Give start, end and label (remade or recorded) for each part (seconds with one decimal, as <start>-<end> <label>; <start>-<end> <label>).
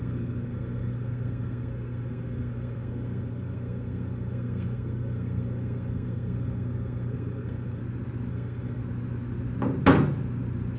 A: 0.0-7.8 remade; 7.8-8.3 recorded; 8.3-8.8 remade; 8.8-10.8 recorded